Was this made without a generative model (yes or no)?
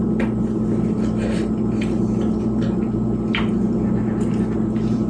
yes